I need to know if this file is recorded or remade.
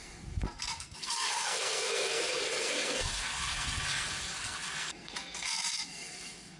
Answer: remade